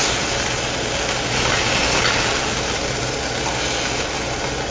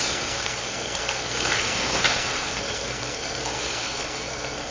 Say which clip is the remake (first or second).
second